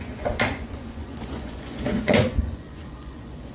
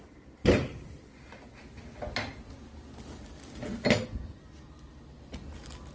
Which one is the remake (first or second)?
first